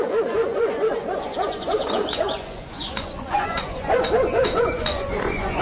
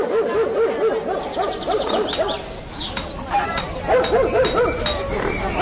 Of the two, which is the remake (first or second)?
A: first